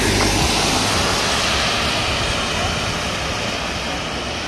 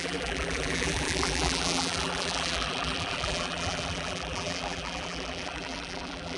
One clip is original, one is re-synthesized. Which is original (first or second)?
first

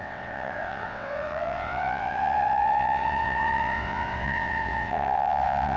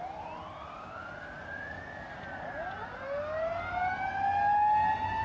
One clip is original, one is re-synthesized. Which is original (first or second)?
second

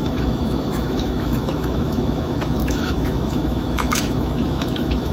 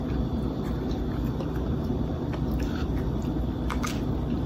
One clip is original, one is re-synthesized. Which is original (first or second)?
second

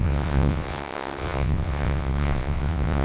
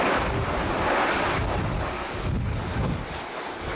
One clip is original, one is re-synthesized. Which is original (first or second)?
second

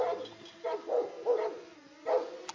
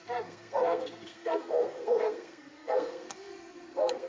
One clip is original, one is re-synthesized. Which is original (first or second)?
first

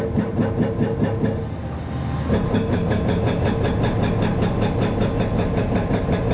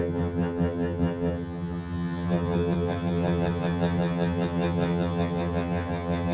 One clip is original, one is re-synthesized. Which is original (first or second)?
first